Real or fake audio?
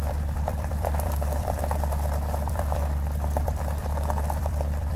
fake